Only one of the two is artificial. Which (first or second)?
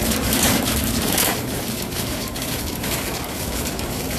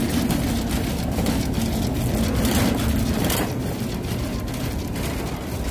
first